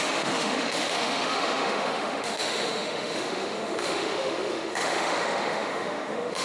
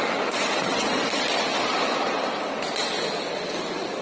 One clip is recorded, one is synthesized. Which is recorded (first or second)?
second